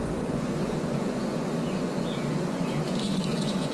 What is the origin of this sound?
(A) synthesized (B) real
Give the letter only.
A